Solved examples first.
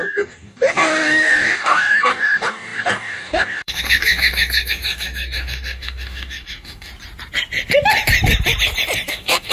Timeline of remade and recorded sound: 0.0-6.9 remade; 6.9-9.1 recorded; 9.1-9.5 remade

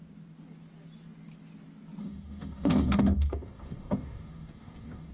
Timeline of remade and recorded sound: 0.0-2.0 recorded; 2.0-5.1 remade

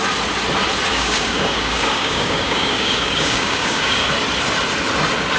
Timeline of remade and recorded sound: 0.0-0.9 recorded; 0.9-4.1 remade; 4.1-5.4 recorded

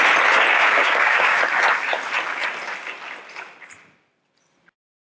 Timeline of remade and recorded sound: 0.0-0.5 recorded; 0.5-1.4 remade; 1.4-5.2 recorded

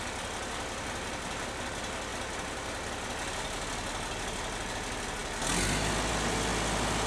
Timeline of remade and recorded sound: 0.0-7.1 recorded

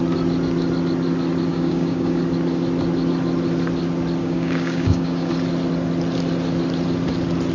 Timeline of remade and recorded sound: 0.0-1.5 recorded; 1.5-2.2 remade; 2.2-4.2 recorded; 4.2-5.3 remade; 5.3-7.5 recorded

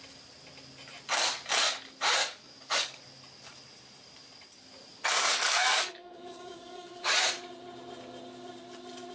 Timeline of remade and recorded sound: 0.0-2.2 recorded; 2.2-3.0 remade; 3.0-4.9 recorded; 4.9-7.1 remade; 7.1-9.1 recorded